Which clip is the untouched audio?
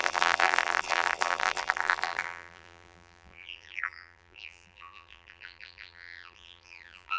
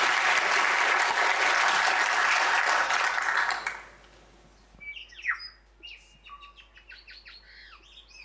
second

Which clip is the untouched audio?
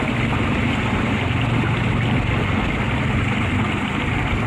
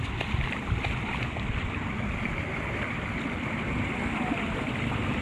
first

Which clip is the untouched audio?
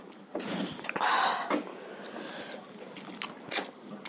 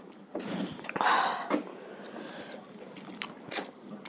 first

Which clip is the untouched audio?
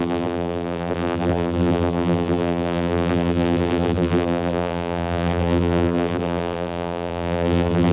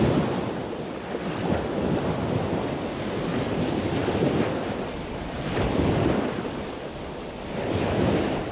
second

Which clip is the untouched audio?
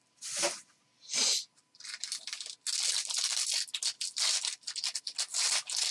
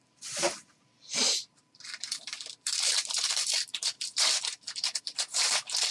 first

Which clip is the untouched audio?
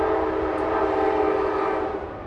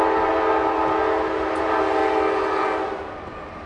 second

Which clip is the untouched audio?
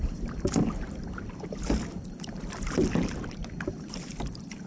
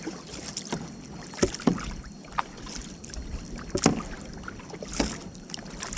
second